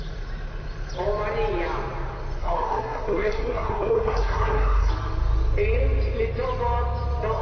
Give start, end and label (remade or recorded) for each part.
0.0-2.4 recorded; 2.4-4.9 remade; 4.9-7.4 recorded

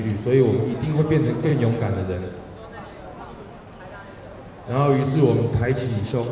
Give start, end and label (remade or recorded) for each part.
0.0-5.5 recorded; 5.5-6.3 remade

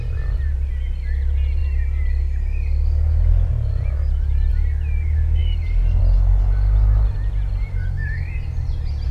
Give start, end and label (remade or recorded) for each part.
0.0-9.1 recorded

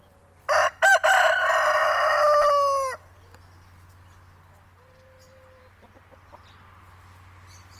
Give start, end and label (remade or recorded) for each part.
0.0-7.8 recorded

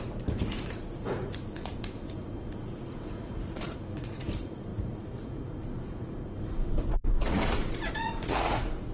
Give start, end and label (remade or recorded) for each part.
0.0-8.9 remade

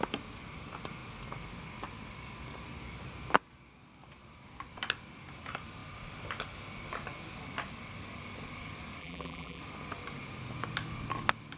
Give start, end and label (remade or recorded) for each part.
0.0-9.0 recorded; 9.0-9.6 remade; 9.6-11.6 recorded